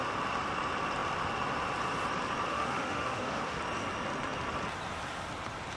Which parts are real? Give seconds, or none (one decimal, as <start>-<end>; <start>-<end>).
0.0-2.5; 3.6-5.8